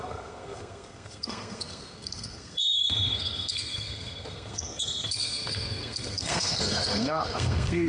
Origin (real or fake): fake